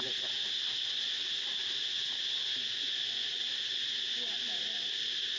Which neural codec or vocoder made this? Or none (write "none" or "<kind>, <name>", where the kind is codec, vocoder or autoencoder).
none